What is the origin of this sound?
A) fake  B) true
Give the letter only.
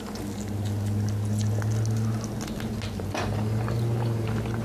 B